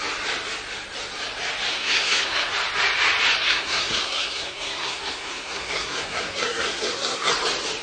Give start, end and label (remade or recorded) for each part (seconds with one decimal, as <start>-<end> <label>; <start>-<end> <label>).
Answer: 0.0-1.7 recorded; 1.7-2.5 remade; 2.5-3.4 recorded; 3.4-7.3 remade; 7.3-7.8 recorded